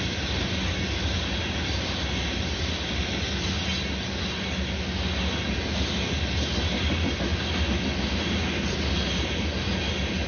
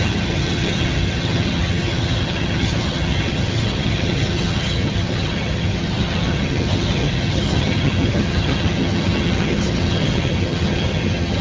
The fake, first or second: second